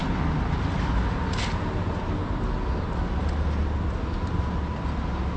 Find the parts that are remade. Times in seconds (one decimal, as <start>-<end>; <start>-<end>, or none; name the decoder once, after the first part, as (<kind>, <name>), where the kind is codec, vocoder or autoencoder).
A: none